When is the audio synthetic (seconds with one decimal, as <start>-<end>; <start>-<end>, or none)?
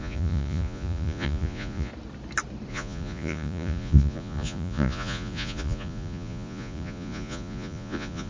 0.0-1.9; 2.7-8.3